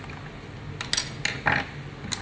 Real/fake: real